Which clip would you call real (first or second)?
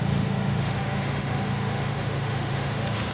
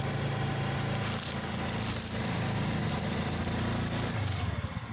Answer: second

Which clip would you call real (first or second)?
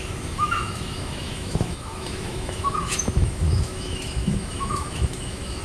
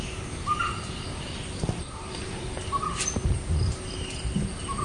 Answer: second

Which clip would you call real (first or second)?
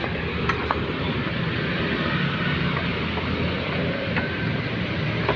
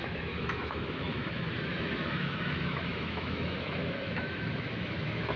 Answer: first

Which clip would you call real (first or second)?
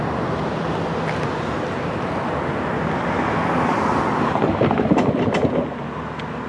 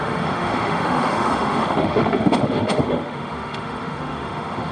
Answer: first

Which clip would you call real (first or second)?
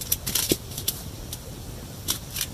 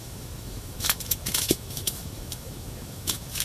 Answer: first